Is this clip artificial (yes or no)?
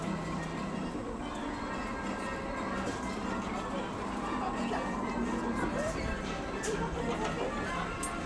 no